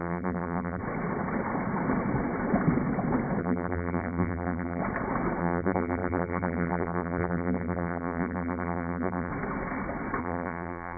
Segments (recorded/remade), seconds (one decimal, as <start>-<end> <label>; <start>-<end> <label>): 0.0-0.8 remade; 0.8-3.4 recorded; 3.4-4.8 remade; 4.8-5.4 recorded; 5.4-9.3 remade; 9.3-10.2 recorded; 10.2-11.0 remade